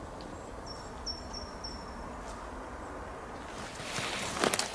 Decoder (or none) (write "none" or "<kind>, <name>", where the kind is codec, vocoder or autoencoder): none